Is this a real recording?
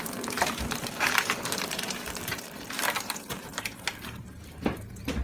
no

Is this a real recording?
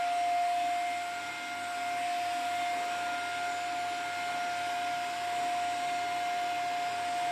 yes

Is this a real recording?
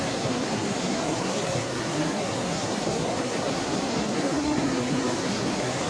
no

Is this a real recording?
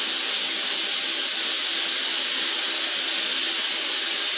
yes